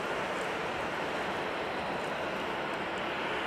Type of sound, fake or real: real